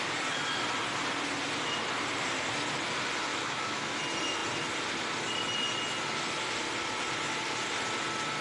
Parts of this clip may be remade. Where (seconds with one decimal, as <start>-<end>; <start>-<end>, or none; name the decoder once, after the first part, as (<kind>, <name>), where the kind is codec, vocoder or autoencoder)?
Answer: 3.3-4.0 (autoencoder, DAC-VAE)